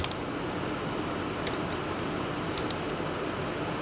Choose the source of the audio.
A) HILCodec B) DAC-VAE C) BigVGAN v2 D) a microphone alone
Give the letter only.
D